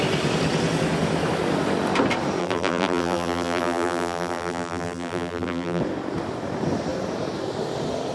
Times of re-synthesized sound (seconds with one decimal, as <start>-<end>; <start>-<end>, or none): 2.4-5.8